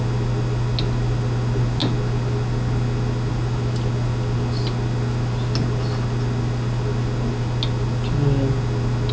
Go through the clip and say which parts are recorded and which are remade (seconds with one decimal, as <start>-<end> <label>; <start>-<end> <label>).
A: 0.0-9.1 recorded

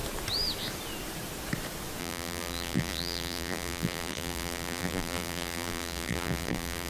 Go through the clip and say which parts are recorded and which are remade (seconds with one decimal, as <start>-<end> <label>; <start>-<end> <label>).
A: 0.0-2.0 recorded; 2.0-6.9 remade

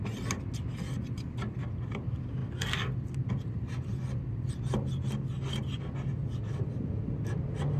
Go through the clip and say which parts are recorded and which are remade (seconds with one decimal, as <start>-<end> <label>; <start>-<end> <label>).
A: 0.0-7.8 recorded